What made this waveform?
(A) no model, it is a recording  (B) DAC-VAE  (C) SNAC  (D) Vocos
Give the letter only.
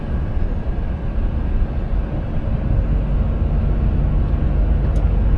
A